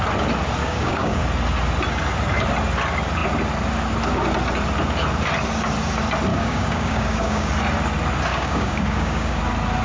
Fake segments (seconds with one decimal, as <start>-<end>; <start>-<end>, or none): 0.6-1.2; 6.3-7.5; 8.3-9.4